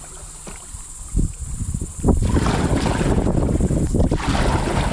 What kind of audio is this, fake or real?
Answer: real